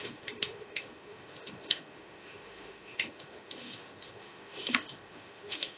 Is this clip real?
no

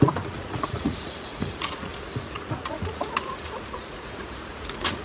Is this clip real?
no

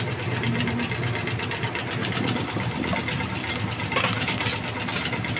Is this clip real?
yes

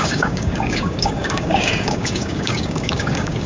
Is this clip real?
no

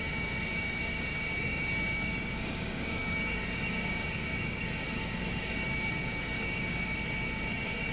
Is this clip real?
no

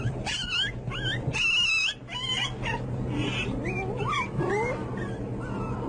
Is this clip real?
yes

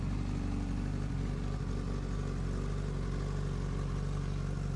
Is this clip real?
yes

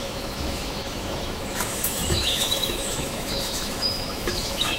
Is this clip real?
no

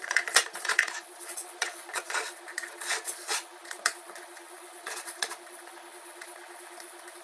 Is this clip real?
no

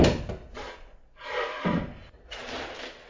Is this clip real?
yes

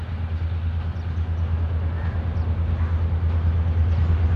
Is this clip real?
yes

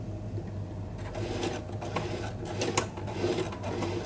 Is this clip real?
yes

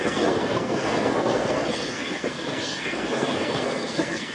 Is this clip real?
no